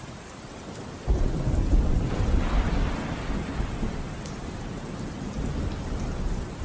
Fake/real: real